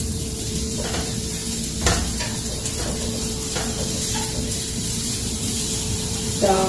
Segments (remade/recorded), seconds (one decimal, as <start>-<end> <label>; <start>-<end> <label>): 0.0-1.4 remade; 1.4-4.8 recorded; 4.8-6.7 remade